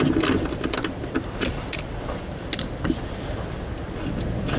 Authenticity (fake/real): real